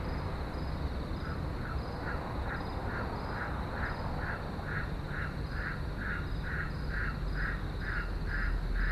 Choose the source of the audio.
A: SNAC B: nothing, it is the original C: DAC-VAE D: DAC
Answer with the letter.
B